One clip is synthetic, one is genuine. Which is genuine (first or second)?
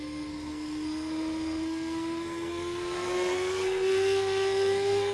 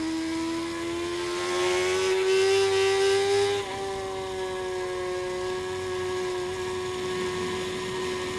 second